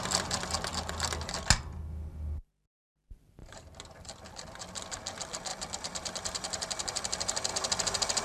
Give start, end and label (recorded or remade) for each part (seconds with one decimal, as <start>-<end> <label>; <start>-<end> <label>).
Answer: 0.0-3.4 recorded; 3.4-4.7 remade; 4.7-5.5 recorded; 5.5-7.5 remade; 7.5-8.2 recorded